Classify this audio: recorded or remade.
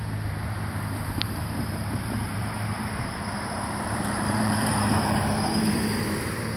remade